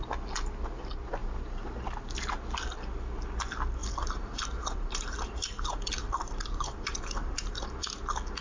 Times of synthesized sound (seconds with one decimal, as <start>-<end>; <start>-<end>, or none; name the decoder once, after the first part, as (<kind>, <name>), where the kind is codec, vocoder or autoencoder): 3.8-7.8 (vocoder, BigVGAN v2)